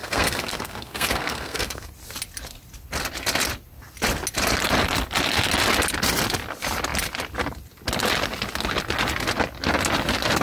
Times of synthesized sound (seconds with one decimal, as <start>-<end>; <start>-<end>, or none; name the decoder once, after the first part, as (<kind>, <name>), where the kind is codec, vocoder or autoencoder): 0.0-1.9 (codec, SNAC)